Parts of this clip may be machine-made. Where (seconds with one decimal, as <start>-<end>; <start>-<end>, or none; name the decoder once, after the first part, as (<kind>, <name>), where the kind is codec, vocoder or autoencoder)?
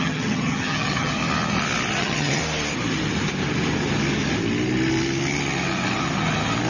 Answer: 0.0-1.2 (vocoder, HiFi-GAN); 2.0-2.4